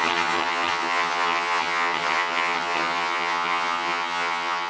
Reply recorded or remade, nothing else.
remade